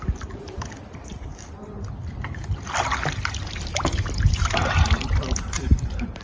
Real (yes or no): yes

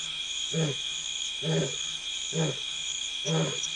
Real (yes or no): no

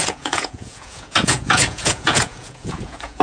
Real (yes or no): no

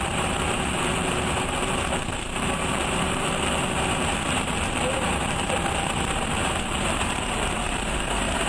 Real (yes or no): no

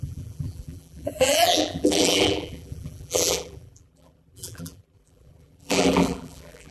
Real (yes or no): no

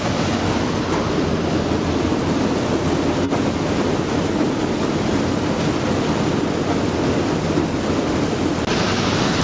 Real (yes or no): yes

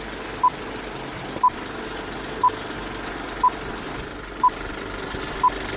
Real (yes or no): yes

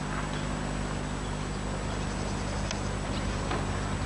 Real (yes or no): yes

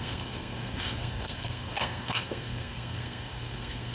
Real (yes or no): no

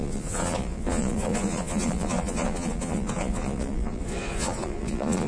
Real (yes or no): no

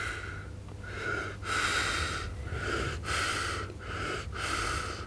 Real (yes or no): yes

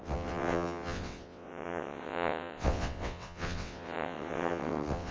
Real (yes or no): no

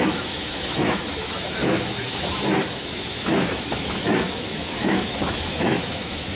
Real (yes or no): no